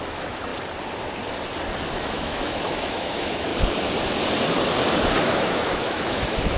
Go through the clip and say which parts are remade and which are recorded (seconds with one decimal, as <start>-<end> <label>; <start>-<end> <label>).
0.0-0.5 remade; 0.5-2.0 recorded; 2.0-3.5 remade; 3.5-5.2 recorded; 5.2-6.6 remade